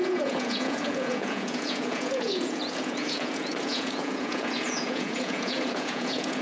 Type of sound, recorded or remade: remade